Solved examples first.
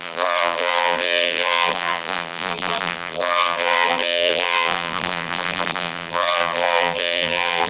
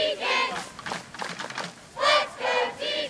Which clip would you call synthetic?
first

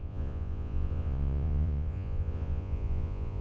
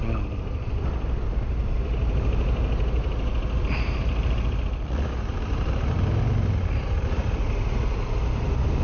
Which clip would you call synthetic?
first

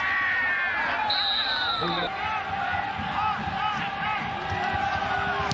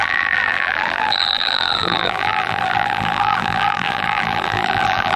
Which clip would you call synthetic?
second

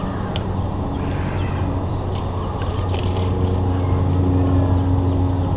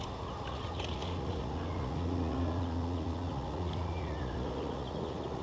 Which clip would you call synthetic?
second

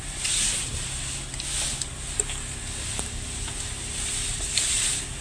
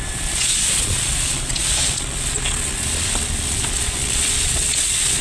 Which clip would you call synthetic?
second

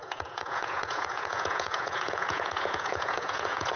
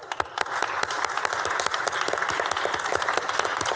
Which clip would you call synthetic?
first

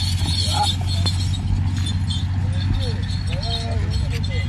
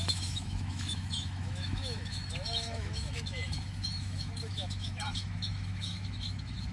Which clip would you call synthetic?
second